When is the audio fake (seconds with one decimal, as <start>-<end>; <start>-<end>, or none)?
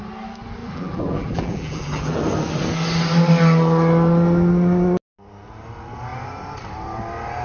0.6-2.2